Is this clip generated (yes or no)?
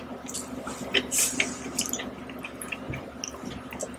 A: no